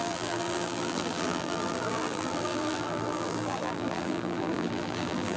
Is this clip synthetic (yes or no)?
yes